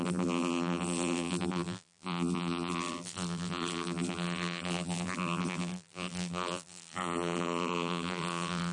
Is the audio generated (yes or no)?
yes